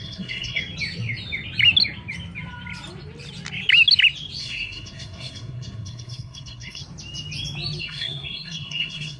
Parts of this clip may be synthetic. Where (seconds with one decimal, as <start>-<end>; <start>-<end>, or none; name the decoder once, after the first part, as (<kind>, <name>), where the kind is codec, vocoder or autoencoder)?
0.0-0.6 (codec, SNAC); 4.4-6.8; 7.8-9.2